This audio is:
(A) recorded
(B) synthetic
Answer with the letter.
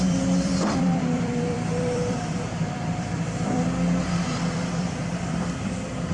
B